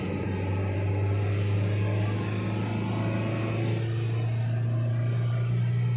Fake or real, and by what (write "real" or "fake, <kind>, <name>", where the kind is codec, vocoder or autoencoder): real